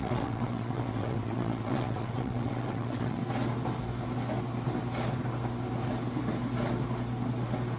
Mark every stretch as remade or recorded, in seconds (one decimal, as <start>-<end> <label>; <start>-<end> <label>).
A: 0.0-3.2 remade; 3.2-7.8 recorded